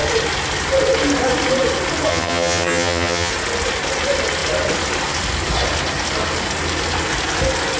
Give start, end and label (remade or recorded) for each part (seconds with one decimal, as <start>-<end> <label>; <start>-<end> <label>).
0.0-2.1 recorded; 2.1-3.3 remade; 3.3-7.8 recorded